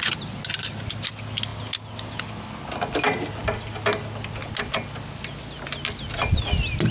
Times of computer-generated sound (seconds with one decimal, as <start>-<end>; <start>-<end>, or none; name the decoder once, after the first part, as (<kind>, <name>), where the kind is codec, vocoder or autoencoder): none